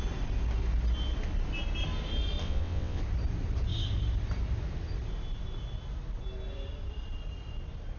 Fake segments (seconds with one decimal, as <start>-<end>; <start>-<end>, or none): 2.4-3.0